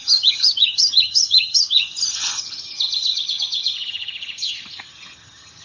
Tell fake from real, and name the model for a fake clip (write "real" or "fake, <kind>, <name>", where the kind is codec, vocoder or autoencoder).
fake, vocoder, HiFi-GAN